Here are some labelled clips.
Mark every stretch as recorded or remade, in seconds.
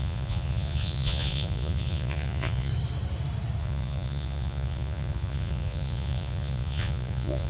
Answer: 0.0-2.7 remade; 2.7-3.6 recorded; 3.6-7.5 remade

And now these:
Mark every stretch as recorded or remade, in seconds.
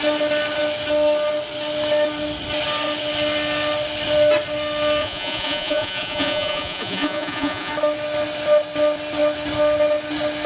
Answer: 0.0-5.0 recorded; 5.0-7.7 remade; 7.7-10.5 recorded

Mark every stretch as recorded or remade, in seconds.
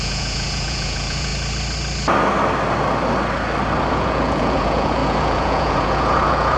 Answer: 0.0-1.3 remade; 1.3-3.9 recorded; 3.9-6.6 remade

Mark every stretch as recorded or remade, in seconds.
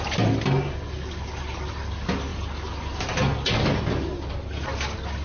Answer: 0.0-5.2 recorded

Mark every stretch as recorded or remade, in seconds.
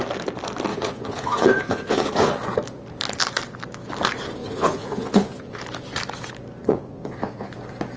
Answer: 0.0-0.7 recorded; 0.7-2.3 remade; 2.3-4.4 recorded; 4.4-5.6 remade; 5.6-6.6 recorded; 6.6-7.5 remade; 7.5-8.0 recorded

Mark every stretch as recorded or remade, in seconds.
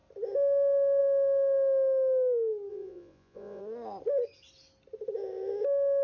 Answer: 0.0-2.7 recorded; 2.7-3.6 remade; 3.6-6.0 recorded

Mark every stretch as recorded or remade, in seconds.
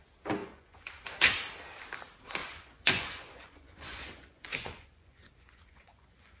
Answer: 0.0-0.4 recorded; 0.4-1.0 remade; 1.0-2.4 recorded; 2.4-6.4 remade